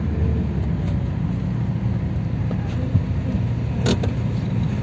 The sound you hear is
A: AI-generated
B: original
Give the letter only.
B